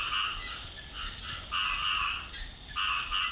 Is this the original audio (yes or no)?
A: yes